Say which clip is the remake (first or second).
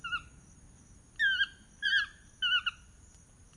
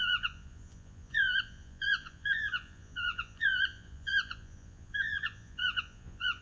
second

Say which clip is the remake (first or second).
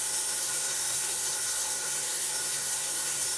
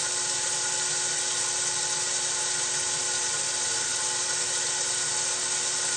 first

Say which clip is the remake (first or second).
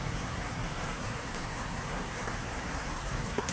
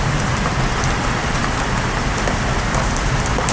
first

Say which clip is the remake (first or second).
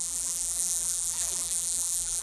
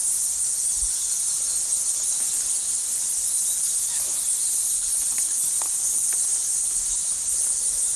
first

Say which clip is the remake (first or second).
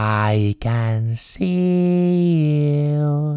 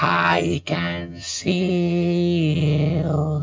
second